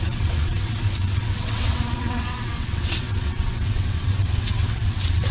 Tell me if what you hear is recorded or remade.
remade